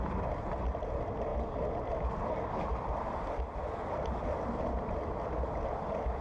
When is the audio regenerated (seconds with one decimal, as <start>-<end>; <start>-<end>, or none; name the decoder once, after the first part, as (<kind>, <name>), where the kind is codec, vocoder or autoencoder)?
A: none